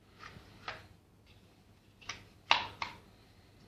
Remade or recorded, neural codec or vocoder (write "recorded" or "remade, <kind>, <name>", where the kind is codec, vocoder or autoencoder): recorded